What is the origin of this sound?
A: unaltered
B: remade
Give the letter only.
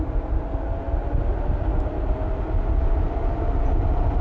A